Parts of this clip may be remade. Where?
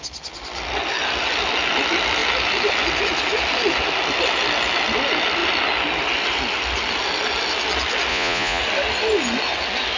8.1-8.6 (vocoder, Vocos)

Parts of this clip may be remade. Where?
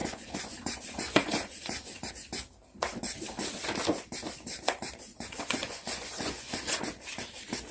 0.0-2.1 (vocoder, Vocos); 5.1-6.8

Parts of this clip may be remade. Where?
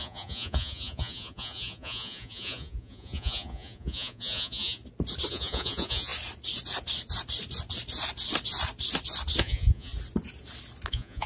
0.0-4.8 (vocoder, Vocos); 5.3-6.1; 9.4-9.9; 10.9-11.3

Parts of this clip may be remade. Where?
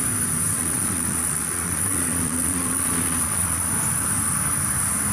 0.6-3.7 (vocoder, Vocos)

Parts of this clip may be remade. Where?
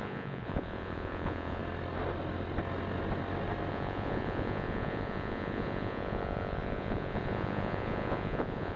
0.0-1.6 (vocoder, Vocos); 3.7-8.8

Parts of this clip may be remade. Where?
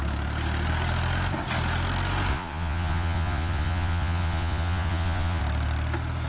2.3-5.4 (vocoder, Vocos)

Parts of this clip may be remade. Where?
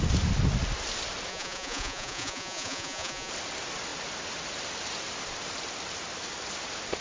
1.3-3.3 (vocoder, Vocos)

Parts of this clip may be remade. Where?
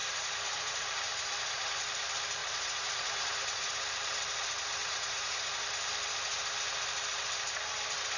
0.0-1.8 (vocoder, Vocos); 2.4-3.7; 4.8-5.6